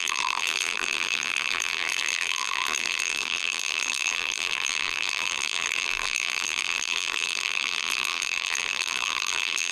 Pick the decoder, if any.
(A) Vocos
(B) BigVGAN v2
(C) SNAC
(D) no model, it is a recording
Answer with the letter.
B